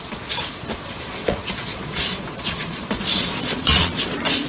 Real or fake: fake